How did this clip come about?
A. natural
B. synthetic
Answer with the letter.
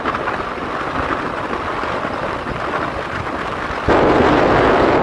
A